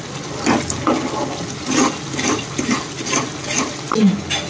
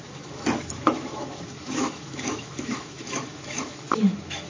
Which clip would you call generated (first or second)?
second